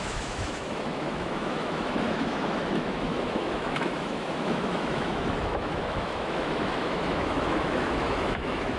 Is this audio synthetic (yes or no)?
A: yes